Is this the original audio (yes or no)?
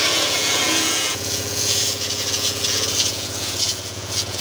no